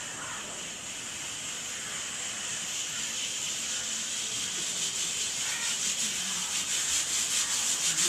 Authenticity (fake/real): fake